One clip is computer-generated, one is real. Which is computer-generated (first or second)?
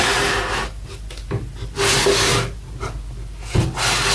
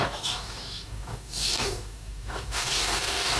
second